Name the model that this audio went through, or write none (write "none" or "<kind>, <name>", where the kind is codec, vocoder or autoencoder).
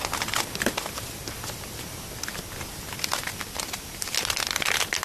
none